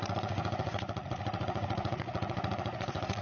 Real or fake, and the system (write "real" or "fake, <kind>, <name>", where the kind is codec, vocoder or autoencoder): fake, vocoder, Vocos